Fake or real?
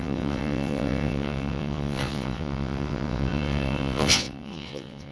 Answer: fake